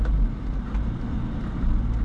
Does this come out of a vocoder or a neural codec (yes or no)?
no